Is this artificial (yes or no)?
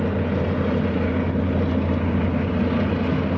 no